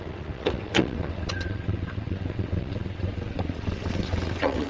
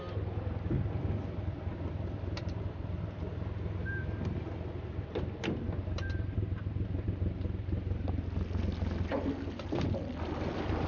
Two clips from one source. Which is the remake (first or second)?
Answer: first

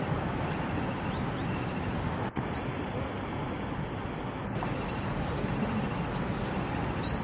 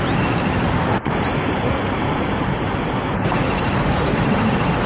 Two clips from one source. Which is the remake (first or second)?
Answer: second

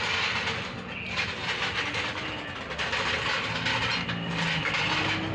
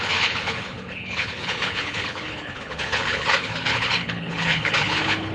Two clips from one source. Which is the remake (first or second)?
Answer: second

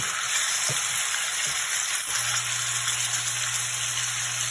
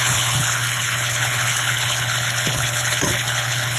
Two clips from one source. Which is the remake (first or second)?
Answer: second